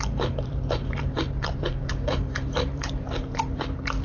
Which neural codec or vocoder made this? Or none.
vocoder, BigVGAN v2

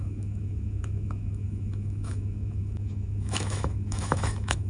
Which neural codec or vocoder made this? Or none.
autoencoder, DAC-VAE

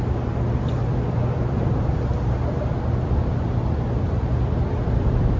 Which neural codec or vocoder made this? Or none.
none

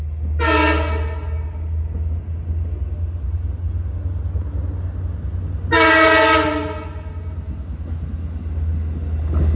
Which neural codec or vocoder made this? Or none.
none